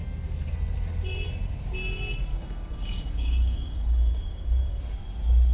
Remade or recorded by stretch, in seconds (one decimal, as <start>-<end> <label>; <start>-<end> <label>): 0.0-2.3 recorded; 2.3-4.8 remade; 4.8-5.5 recorded